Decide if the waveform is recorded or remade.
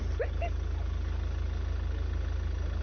recorded